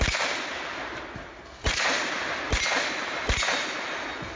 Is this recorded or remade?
recorded